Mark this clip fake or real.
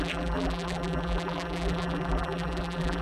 fake